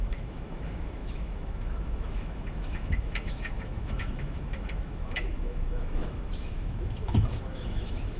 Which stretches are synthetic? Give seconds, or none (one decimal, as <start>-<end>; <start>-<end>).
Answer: 0.0-8.2